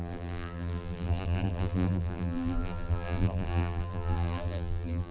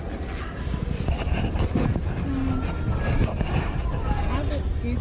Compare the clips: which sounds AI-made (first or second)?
first